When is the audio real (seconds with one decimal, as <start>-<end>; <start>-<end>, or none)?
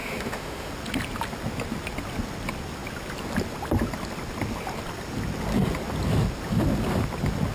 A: 0.7-7.5